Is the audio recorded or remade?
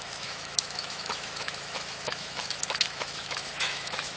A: remade